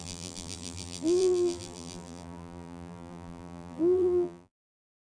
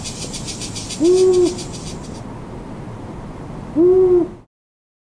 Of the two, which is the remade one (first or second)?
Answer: first